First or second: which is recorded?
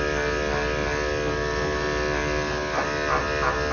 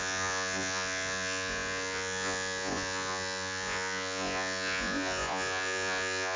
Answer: first